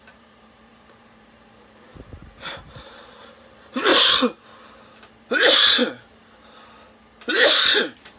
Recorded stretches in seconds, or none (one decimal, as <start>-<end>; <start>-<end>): 3.9-7.3